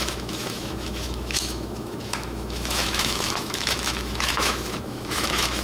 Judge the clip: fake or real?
fake